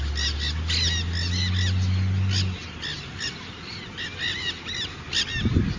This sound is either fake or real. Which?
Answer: real